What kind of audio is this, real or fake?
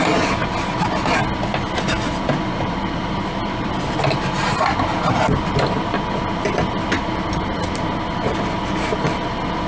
real